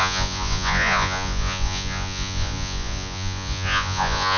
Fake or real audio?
fake